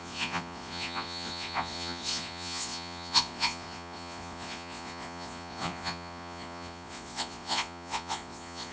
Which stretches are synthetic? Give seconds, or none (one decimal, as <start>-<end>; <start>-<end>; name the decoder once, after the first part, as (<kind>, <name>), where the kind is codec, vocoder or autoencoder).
0.0-8.7 (vocoder, Vocos)